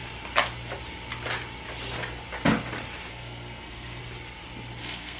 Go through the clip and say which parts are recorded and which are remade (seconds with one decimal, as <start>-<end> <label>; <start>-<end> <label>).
0.0-3.1 recorded; 3.1-4.0 remade; 4.0-4.8 recorded; 4.8-5.2 remade